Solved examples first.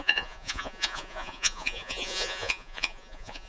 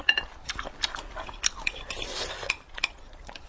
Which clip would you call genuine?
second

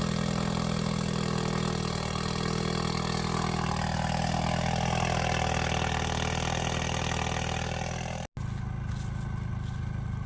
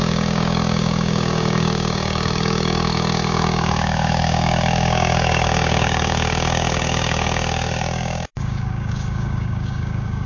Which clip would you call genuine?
first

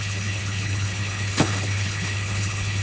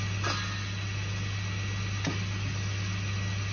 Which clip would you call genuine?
second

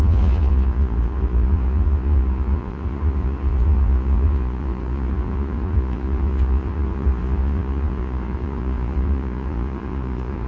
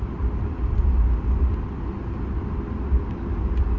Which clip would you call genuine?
second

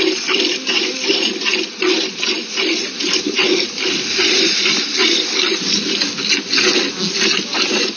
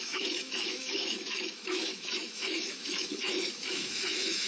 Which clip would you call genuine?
first